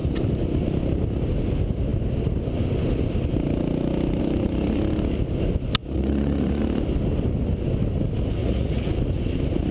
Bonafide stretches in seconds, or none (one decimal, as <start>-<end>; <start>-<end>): 0.0-5.8; 6.6-8.4; 8.9-9.7